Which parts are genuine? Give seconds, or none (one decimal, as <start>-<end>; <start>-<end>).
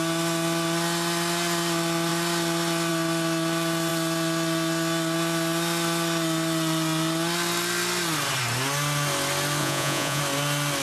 0.0-9.6; 10.2-10.8